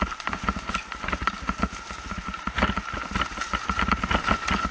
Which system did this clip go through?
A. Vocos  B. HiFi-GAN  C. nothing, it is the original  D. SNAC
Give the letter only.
C